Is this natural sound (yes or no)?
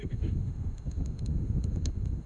no